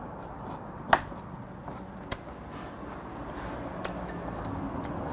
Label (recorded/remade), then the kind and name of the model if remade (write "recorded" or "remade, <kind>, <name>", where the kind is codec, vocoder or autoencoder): recorded